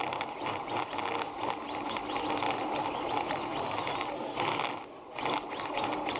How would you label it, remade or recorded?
recorded